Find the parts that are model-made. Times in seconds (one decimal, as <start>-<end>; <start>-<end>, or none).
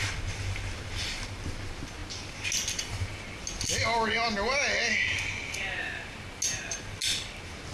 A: none